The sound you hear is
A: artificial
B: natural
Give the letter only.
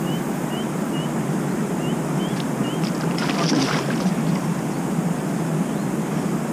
B